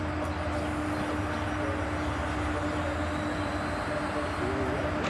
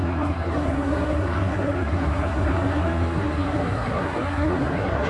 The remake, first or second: second